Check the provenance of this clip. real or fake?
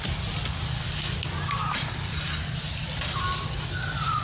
real